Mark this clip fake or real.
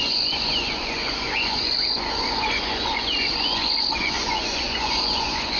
fake